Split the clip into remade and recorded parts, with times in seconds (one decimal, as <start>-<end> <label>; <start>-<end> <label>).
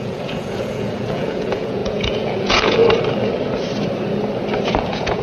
0.0-2.8 remade; 2.8-4.8 recorded; 4.8-5.2 remade